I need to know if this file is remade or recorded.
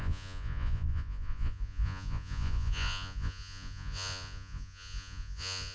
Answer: remade